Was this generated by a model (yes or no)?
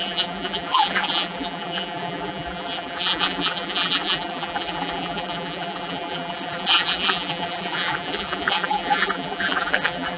yes